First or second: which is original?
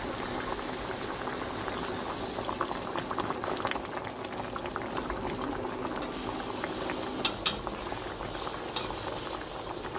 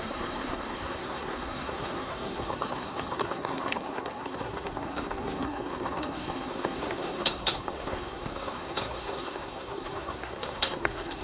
first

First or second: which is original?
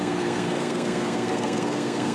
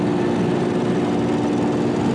second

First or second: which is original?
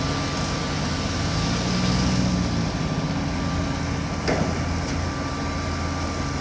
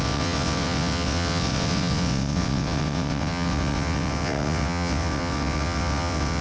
first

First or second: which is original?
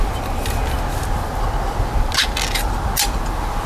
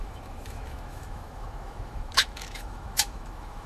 first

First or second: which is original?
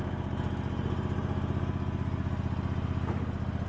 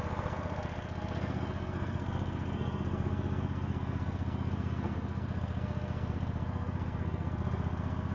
first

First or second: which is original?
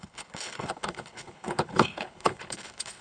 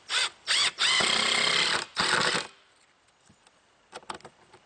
second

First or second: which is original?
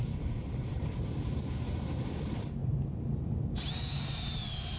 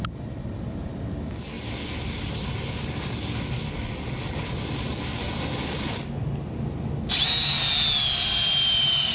second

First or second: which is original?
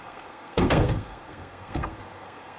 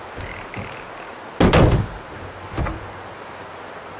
second